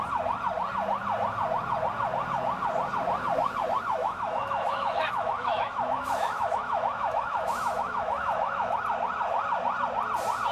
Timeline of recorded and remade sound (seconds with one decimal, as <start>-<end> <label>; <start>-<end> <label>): 0.0-4.0 recorded; 4.0-8.8 remade; 8.8-10.5 recorded